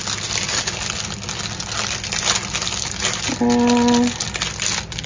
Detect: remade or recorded recorded